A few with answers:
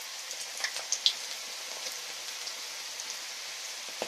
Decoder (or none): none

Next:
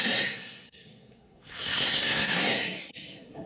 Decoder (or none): codec, SNAC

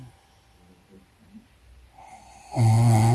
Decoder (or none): none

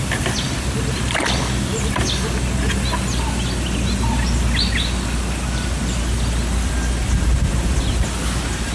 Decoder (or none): none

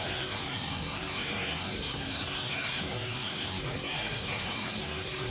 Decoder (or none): codec, SNAC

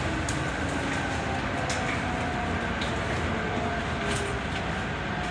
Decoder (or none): none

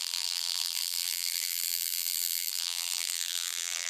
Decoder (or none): vocoder, BigVGAN v2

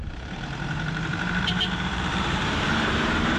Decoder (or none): vocoder, BigVGAN v2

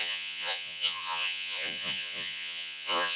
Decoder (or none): vocoder, Vocos